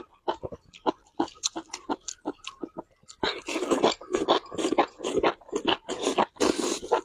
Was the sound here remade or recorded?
recorded